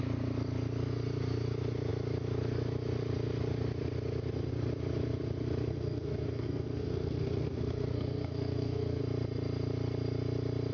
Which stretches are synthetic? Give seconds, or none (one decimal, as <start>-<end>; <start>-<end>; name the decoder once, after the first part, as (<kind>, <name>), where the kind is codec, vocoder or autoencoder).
5.7-9.0 (codec, SNAC)